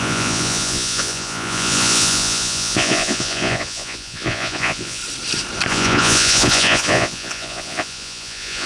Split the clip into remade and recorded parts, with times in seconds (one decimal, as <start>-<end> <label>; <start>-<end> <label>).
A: 0.0-5.0 remade; 5.0-5.7 recorded; 5.7-8.7 remade